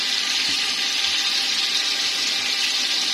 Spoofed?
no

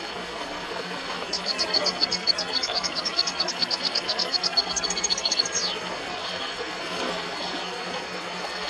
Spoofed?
yes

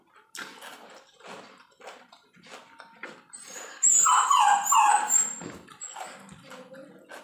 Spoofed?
no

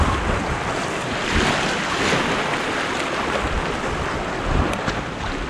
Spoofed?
no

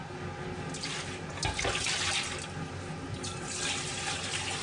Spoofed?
no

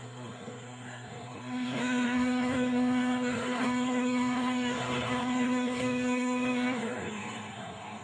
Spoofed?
yes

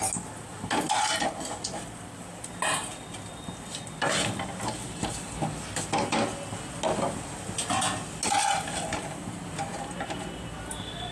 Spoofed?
no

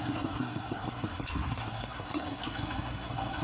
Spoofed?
yes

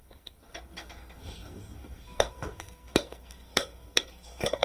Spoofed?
yes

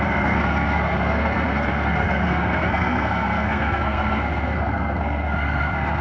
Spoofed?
yes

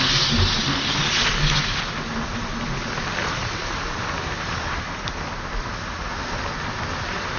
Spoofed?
no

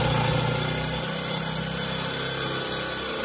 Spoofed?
no